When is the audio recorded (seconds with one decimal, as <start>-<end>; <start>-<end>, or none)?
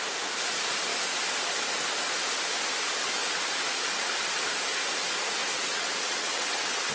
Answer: 0.0-5.4